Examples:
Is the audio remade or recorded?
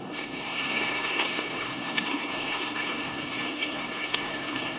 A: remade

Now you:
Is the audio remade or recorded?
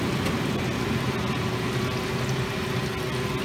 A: recorded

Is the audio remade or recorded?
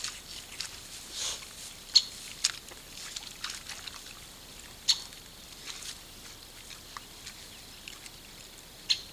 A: recorded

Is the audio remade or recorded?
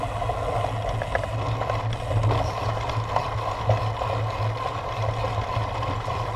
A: recorded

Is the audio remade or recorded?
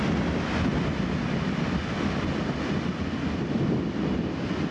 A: recorded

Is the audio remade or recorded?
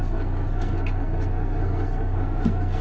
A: remade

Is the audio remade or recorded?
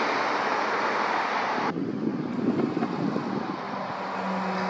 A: recorded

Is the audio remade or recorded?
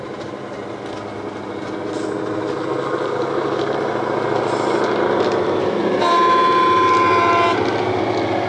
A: recorded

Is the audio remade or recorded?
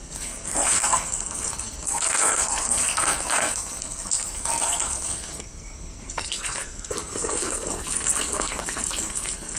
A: remade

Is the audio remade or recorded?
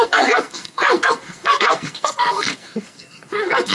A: remade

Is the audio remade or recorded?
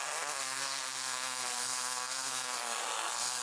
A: remade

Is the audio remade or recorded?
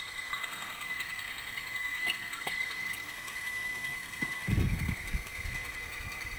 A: remade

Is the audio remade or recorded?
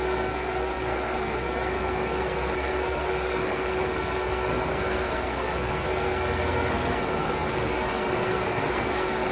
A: remade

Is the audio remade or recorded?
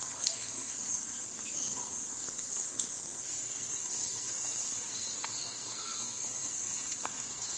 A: remade